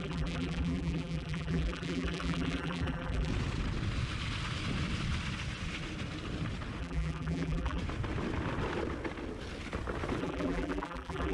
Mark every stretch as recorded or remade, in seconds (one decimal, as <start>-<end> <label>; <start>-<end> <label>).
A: 0.0-3.3 remade; 3.3-6.8 recorded; 6.8-7.8 remade; 7.8-10.2 recorded; 10.2-11.3 remade